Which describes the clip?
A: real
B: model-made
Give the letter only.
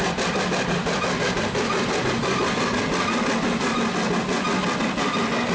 A